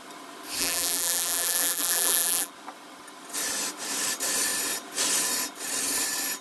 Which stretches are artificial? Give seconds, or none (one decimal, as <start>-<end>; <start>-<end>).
0.6-2.5